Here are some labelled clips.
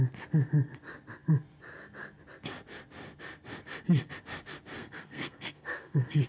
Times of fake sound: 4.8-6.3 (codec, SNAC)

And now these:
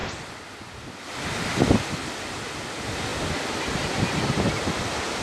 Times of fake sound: none

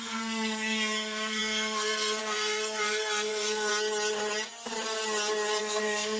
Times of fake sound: 0.0-3.7 (codec, SNAC); 5.6-6.2

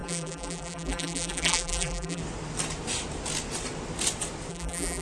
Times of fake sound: 0.0-2.2 (vocoder, BigVGAN v2); 4.5-5.0